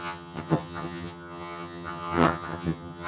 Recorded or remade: remade